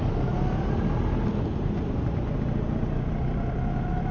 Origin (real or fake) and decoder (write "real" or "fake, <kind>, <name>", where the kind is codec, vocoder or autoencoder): real